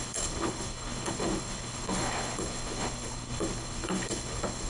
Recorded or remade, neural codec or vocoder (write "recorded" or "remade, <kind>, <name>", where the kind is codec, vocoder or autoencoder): remade, codec, HILCodec